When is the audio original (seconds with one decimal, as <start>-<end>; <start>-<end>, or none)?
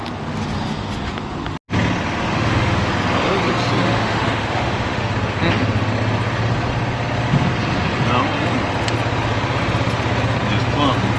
0.0-2.3; 2.9-3.8; 5.1-11.2